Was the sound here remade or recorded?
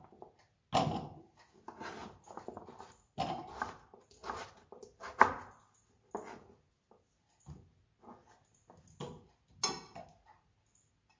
recorded